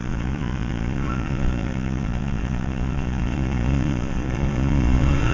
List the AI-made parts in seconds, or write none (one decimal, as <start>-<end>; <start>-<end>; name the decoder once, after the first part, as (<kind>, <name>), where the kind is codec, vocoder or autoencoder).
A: 0.0-5.3 (vocoder, Vocos)